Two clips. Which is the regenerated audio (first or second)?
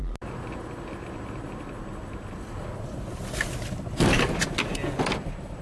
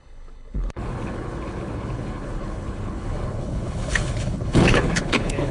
second